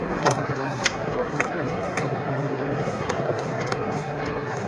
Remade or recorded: remade